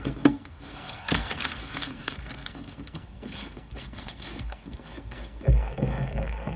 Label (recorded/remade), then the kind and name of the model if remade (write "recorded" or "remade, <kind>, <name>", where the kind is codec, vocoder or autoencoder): remade, codec, SNAC